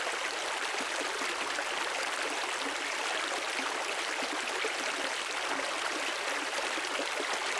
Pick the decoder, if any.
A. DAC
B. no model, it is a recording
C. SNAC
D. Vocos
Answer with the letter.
B